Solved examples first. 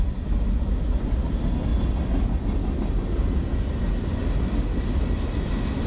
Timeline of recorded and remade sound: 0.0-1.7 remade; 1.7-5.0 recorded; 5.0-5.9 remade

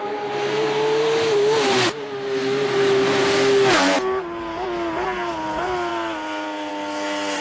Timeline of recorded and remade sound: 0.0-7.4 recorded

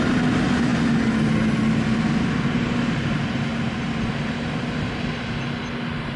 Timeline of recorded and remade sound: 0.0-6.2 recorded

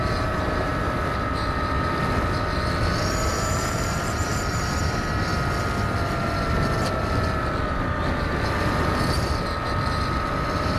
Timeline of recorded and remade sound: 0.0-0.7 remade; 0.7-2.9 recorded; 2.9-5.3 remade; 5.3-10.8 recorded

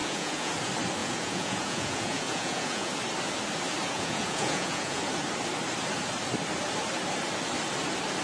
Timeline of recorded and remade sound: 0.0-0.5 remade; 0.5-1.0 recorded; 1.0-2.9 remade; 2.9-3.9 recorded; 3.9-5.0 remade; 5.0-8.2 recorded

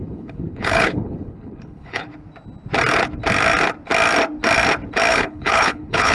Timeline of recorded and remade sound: 0.0-2.1 remade; 2.1-5.1 recorded; 5.1-6.1 remade